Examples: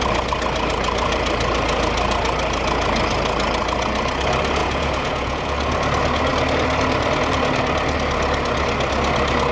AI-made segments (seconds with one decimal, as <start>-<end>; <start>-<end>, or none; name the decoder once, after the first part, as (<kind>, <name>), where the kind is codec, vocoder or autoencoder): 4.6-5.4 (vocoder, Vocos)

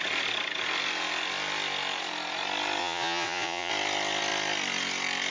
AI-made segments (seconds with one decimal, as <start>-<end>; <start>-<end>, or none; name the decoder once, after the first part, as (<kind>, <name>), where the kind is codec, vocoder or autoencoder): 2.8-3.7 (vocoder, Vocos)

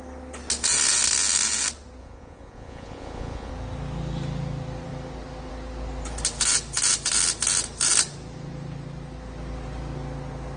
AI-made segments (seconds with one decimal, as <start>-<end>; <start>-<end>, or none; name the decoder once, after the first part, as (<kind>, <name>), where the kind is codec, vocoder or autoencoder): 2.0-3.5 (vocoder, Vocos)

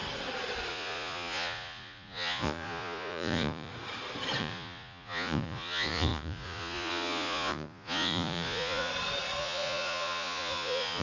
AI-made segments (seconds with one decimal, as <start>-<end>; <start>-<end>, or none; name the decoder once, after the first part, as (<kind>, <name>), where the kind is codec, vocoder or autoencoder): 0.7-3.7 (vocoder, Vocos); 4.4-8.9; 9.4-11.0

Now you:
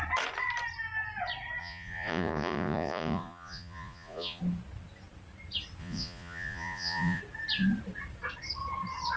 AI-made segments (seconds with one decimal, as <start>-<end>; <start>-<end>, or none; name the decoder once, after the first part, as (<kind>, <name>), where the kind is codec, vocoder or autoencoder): 1.6-4.4 (vocoder, Vocos); 5.8-7.2